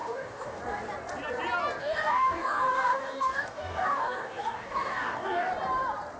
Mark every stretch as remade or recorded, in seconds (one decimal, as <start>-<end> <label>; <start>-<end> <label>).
0.0-0.6 remade; 0.6-1.8 recorded; 1.8-5.5 remade; 5.5-6.2 recorded